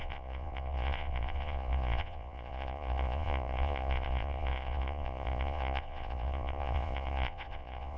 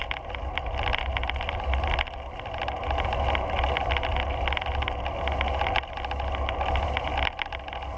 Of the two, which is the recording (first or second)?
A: second